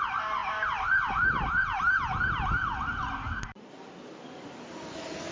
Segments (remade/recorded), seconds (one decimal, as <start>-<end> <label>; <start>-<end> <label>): 0.0-5.3 recorded